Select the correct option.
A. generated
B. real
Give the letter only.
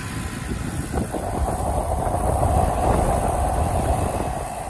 A